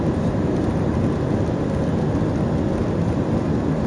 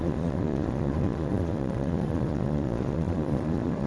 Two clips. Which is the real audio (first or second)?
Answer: first